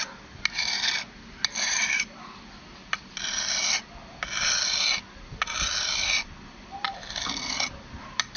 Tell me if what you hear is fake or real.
real